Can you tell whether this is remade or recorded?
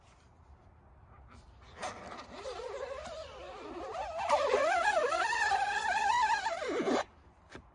remade